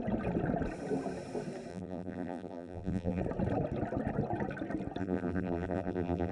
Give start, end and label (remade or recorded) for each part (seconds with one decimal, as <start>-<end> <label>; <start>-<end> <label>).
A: 0.0-1.7 recorded; 1.7-3.2 remade; 3.2-5.0 recorded; 5.0-6.3 remade